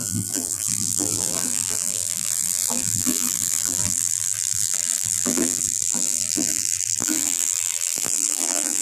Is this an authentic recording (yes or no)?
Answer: no